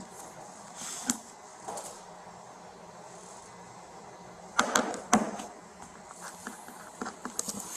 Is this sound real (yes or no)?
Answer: yes